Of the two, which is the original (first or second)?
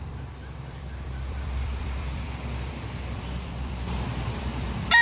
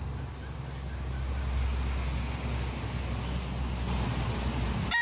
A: second